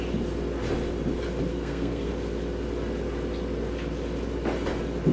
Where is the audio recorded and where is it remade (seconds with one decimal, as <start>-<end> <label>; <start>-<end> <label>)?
0.0-1.5 recorded; 1.5-2.1 remade; 2.1-5.1 recorded